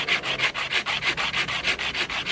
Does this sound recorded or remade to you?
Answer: recorded